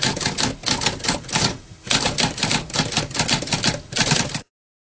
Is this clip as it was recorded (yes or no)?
yes